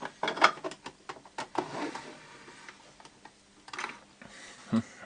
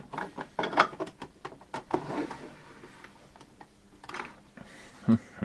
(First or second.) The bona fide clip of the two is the first